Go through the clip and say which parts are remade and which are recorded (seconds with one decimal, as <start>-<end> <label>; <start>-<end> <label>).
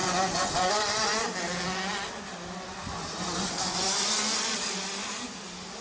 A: 0.0-0.7 remade; 0.7-5.8 recorded